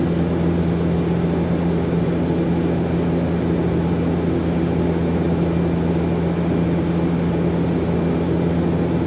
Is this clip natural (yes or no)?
yes